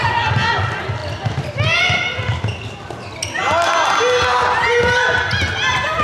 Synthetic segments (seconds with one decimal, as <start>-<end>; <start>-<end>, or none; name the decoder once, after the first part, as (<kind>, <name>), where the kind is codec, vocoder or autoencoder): none